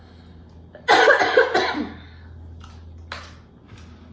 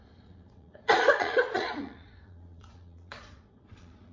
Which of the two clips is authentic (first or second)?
first